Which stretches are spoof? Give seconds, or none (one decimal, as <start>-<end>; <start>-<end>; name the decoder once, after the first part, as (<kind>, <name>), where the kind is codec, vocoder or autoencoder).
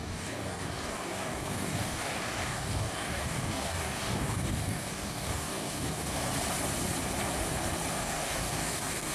0.0-6.3 (codec, DAC); 7.9-9.1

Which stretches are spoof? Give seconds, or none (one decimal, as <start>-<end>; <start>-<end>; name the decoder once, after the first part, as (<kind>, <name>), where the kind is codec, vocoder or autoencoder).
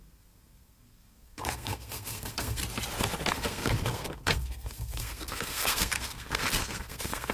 0.0-2.6 (codec, SNAC); 3.3-7.3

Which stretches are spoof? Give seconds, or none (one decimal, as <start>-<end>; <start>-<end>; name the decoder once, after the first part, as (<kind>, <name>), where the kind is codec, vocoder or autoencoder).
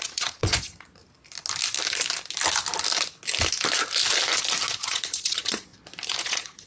0.0-1.0 (vocoder, Vocos); 4.8-5.7; 6.2-6.7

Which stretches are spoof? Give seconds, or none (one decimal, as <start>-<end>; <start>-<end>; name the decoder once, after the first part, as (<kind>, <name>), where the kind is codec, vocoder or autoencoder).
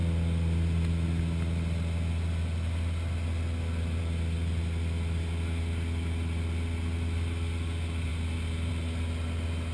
none